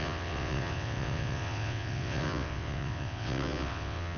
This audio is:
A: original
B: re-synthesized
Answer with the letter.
B